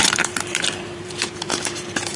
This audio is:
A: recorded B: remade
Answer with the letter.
B